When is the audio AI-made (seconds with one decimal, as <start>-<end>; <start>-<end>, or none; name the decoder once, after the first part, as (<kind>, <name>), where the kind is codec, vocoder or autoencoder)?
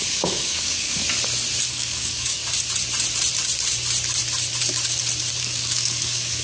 0.0-1.0 (codec, DAC); 1.7-2.4; 5.4-6.4